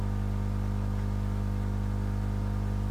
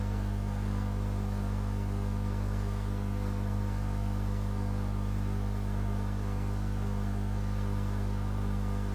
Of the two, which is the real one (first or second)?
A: first